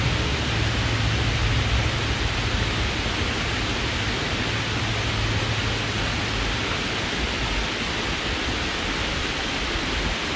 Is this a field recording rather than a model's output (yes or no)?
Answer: yes